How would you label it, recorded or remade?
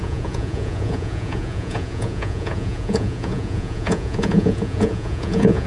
remade